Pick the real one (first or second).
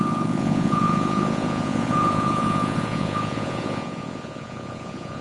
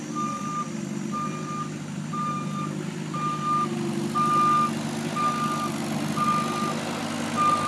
second